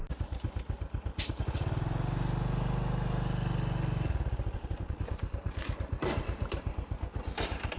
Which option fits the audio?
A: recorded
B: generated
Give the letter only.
A